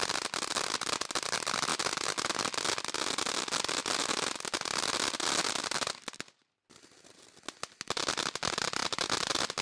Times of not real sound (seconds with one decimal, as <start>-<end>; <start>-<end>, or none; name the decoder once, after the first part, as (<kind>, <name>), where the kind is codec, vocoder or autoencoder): none